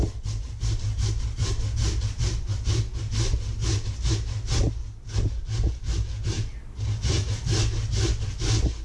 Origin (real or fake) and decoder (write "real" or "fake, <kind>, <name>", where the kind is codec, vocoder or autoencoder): real